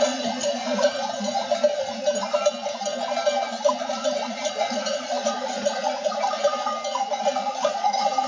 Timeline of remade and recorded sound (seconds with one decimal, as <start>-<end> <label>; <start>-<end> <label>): 0.0-1.0 remade; 1.0-3.6 recorded; 3.6-6.7 remade; 6.7-7.2 recorded; 7.2-8.3 remade